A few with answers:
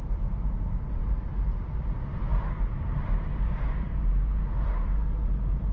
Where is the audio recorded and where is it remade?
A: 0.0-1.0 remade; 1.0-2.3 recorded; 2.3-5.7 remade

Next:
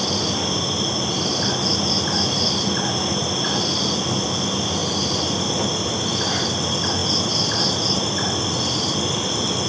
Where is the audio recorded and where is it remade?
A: 0.0-9.7 recorded

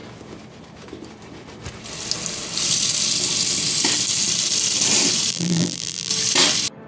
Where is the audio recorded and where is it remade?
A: 0.0-5.3 recorded; 5.3-6.1 remade; 6.1-6.9 recorded